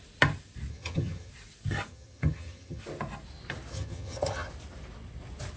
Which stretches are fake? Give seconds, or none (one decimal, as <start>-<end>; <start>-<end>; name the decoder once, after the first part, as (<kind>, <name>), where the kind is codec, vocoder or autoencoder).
0.7-1.3 (vocoder, HiFi-GAN); 1.9-2.8; 3.7-4.5